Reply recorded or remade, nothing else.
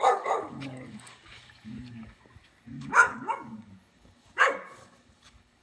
remade